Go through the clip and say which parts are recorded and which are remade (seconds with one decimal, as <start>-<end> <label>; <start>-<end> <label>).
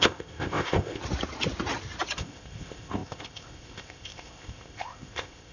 0.0-1.0 remade; 1.0-2.2 recorded; 2.2-5.5 remade